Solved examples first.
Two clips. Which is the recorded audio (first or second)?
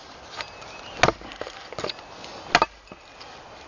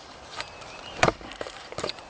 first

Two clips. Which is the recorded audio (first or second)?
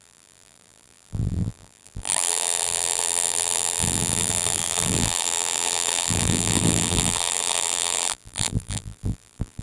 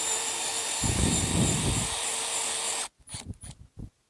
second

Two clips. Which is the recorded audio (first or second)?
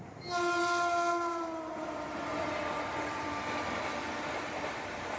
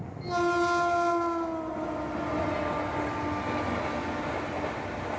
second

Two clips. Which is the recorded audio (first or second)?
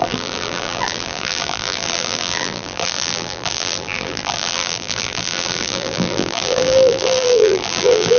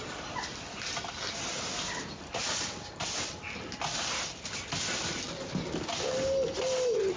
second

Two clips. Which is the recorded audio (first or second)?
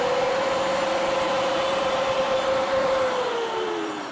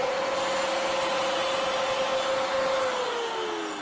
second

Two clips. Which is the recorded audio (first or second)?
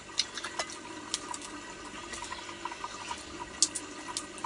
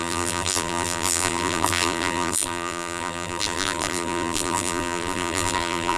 first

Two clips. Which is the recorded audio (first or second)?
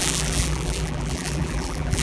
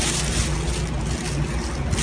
second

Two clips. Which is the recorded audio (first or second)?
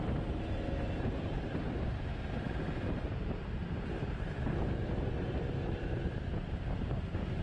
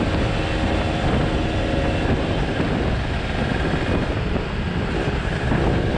second